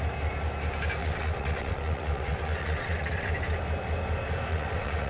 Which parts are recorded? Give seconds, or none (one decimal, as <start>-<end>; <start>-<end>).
0.0-1.0; 3.3-4.5